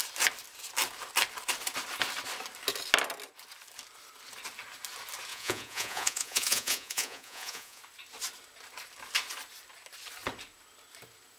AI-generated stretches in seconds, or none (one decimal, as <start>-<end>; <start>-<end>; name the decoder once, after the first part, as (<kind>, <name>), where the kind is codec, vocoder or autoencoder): 5.3-7.8 (vocoder, Vocos)